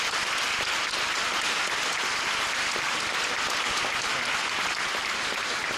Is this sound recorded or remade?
recorded